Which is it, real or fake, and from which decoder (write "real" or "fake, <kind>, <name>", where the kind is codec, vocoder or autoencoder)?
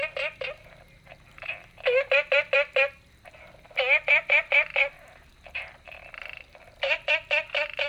real